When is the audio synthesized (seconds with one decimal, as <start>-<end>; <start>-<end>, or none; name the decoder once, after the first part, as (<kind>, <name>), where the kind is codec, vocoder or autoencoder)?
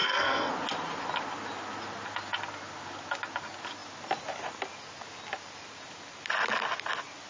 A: 0.0-0.5 (codec, SNAC)